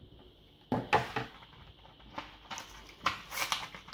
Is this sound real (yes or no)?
yes